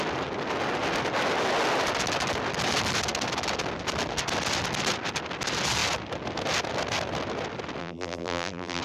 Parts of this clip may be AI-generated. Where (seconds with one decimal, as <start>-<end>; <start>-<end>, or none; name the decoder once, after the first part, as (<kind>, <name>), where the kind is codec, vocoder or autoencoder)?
7.8-8.8 (vocoder, BigVGAN v2)

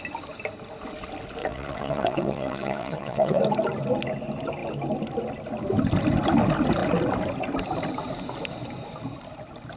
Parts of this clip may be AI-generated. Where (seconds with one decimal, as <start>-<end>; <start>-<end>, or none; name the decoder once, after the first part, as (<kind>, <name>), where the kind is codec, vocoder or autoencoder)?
1.4-3.4 (vocoder, WaveNeXt)

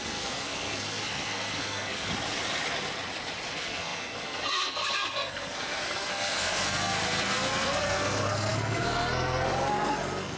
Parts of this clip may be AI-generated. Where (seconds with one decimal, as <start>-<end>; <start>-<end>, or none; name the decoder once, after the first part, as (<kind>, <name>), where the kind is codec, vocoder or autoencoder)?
0.0-2.1 (codec, SNAC); 3.5-10.4

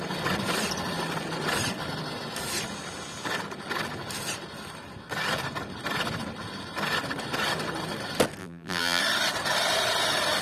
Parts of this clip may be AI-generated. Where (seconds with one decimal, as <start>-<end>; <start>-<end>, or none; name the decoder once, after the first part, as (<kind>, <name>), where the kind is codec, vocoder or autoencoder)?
8.4-9.0 (vocoder, BigVGAN v2)